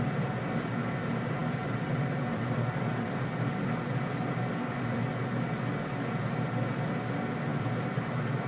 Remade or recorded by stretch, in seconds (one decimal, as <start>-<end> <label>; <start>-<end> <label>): 0.0-1.4 recorded; 1.4-5.1 remade; 5.1-7.5 recorded; 7.5-8.5 remade